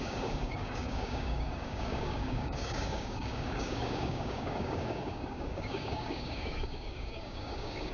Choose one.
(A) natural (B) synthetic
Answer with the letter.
B